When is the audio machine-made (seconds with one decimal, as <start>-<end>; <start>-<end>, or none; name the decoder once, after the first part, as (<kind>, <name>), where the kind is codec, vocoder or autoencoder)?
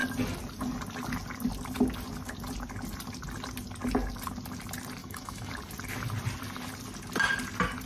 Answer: 5.0-5.5 (autoencoder, DAC-VAE)